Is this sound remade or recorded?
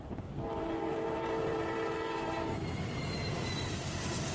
remade